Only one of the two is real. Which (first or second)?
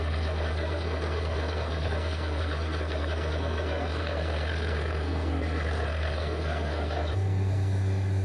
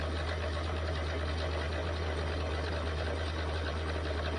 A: second